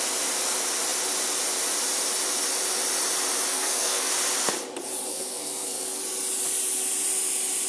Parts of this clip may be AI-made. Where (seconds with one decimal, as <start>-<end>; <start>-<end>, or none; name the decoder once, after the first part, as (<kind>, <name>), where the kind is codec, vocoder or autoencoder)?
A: 3.5-4.1 (codec, SNAC); 5.1-6.0